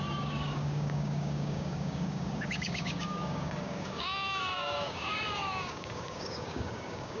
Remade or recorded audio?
remade